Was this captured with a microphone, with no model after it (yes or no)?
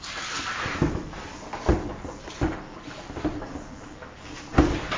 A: yes